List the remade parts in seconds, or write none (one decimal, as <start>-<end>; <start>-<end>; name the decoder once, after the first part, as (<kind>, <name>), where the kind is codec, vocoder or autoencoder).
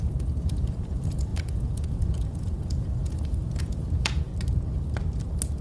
0.0-4.3 (vocoder, Vocos)